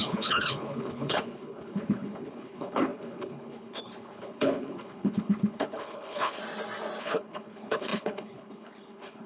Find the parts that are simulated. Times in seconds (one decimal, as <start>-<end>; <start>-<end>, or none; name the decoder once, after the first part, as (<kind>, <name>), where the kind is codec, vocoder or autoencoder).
0.0-6.4 (codec, HILCodec); 7.0-9.3